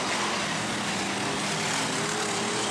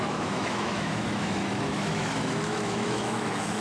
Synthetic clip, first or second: second